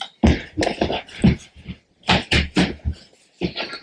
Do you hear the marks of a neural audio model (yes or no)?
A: no